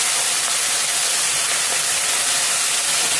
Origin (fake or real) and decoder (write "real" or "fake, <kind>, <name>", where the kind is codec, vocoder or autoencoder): real